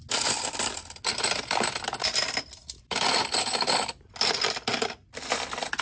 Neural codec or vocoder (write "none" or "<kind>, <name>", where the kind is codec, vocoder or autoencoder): none